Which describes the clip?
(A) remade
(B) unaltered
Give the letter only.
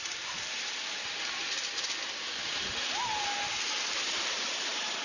B